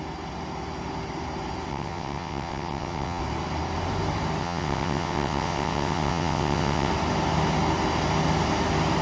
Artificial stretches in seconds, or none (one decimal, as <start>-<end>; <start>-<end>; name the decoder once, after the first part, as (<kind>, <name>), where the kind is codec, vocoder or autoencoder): 1.7-3.2 (vocoder, WaveNeXt); 4.4-6.9